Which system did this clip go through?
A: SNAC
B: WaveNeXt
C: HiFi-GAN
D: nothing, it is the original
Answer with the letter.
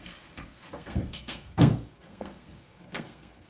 A